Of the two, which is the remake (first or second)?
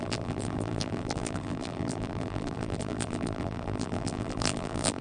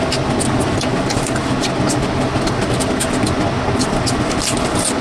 first